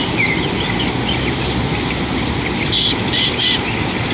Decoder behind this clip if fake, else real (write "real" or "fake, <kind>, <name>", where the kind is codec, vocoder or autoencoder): real